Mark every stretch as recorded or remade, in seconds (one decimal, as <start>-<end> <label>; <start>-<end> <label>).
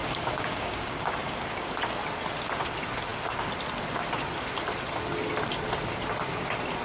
0.0-1.7 remade; 1.7-6.8 recorded